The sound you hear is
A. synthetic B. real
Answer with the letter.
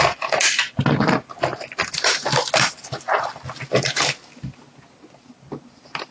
B